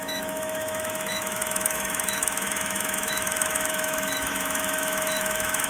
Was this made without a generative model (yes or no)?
no